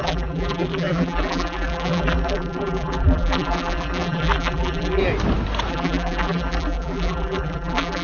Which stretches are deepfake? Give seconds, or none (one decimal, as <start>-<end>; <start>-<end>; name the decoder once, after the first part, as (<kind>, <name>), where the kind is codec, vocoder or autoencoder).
0.0-5.0 (vocoder, BigVGAN v2); 5.7-8.0